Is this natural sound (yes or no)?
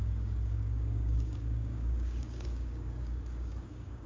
no